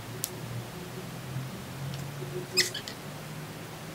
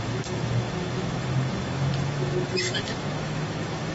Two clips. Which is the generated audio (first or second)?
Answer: second